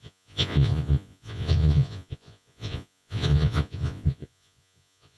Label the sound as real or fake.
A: fake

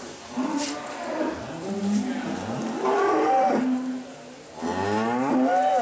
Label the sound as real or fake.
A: real